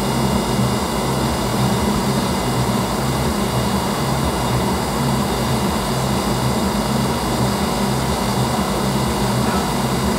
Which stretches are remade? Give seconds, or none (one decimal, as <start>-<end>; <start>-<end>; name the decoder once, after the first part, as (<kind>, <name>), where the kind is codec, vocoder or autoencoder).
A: 1.5-5.9 (vocoder, BigVGAN v2)